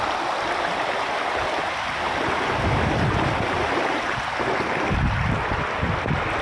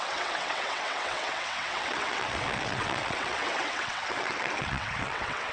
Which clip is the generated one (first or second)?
second